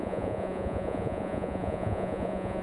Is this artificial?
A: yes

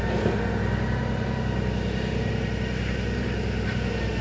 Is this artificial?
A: no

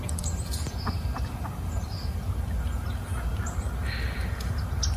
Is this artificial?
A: no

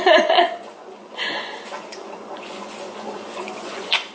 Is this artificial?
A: yes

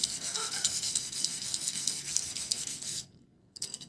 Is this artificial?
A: yes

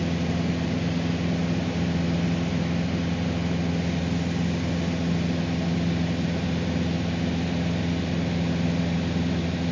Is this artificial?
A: no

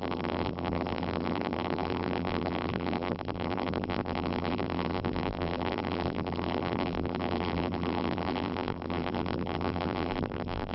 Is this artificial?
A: yes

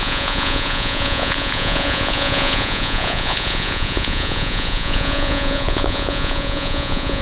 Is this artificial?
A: yes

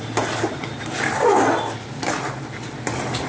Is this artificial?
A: no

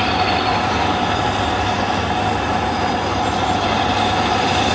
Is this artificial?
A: no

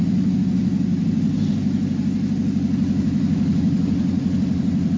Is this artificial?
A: no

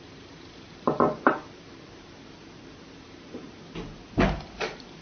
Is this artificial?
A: yes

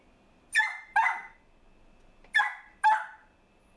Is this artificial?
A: no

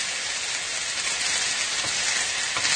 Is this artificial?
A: no